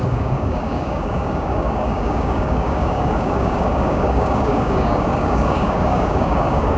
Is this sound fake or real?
fake